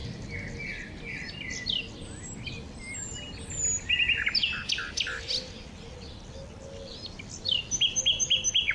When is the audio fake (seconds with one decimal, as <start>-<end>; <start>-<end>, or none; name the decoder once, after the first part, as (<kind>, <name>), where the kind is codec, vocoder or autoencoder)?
none